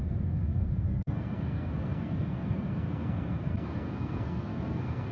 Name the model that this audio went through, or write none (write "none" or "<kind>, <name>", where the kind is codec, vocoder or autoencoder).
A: codec, SNAC